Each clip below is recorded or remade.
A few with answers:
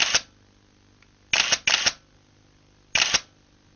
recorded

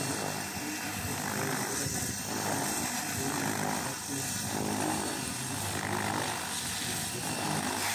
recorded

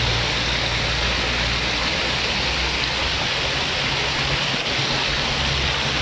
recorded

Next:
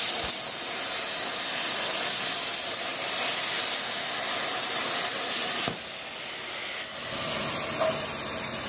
recorded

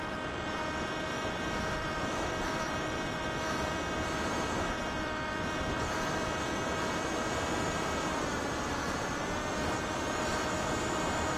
remade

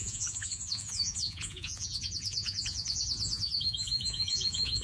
remade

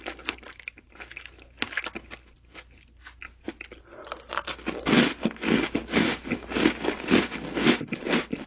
recorded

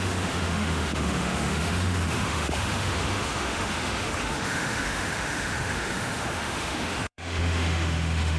remade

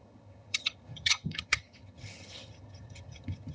remade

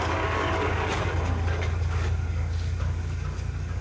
remade